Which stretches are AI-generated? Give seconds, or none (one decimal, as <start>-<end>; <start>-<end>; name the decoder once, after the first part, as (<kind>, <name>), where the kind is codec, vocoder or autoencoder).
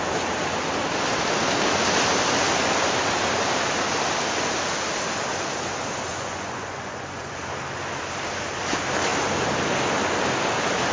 6.1-7.4 (vocoder, Vocos)